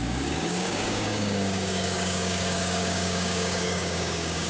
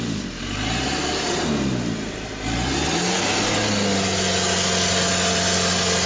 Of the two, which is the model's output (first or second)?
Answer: first